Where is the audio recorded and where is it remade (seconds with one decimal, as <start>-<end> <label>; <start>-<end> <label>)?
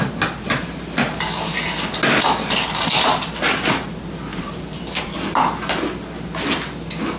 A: 0.0-7.2 recorded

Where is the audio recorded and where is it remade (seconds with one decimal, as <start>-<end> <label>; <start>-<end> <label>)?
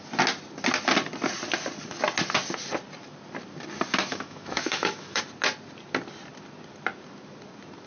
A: 0.0-4.1 recorded; 4.1-5.2 remade; 5.2-7.9 recorded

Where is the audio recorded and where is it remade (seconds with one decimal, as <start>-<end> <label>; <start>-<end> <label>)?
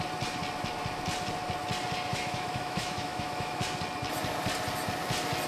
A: 0.0-2.1 recorded; 2.1-3.6 remade; 3.6-5.5 recorded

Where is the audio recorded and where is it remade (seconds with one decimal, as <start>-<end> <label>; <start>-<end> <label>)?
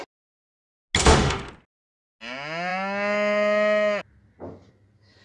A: 0.0-1.0 recorded; 1.0-1.5 remade; 1.5-5.2 recorded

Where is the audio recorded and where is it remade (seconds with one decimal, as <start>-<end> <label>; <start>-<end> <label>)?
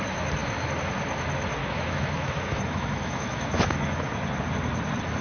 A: 0.0-1.6 recorded; 1.6-4.1 remade; 4.1-5.2 recorded